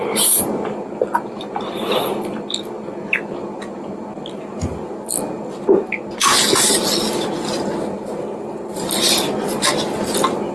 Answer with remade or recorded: recorded